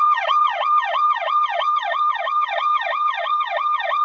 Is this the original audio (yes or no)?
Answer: no